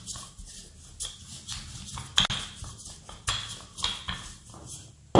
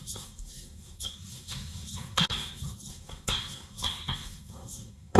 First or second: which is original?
first